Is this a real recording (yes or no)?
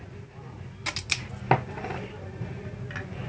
yes